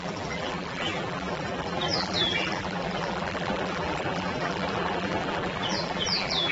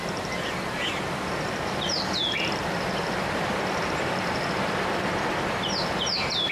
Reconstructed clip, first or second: first